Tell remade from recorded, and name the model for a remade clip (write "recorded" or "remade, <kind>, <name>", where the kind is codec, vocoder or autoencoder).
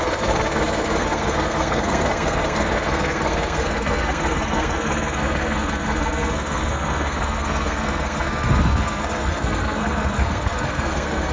remade, codec, SNAC